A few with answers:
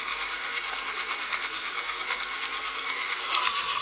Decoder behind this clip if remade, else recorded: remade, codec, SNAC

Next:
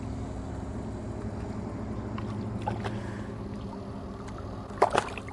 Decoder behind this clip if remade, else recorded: recorded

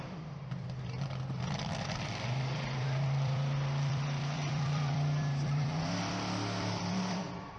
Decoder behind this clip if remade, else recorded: remade, vocoder, BigVGAN v2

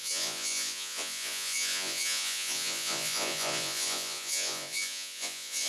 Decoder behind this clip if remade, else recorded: remade, vocoder, Vocos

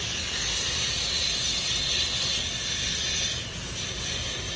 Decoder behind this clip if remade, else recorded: recorded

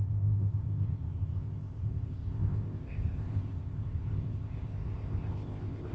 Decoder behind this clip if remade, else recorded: remade, codec, ZipCodec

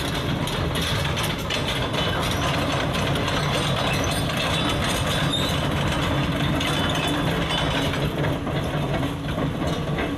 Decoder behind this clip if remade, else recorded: recorded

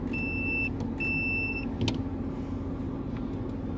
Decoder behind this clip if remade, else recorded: recorded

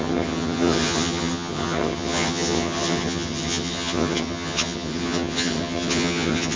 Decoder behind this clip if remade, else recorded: remade, vocoder, HiFi-GAN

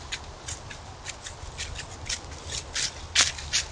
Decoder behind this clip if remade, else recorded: recorded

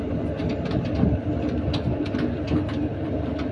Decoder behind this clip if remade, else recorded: remade, vocoder, BigVGAN v2